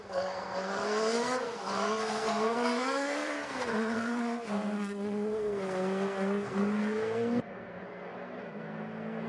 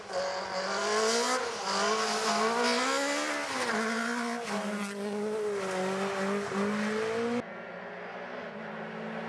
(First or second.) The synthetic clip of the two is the first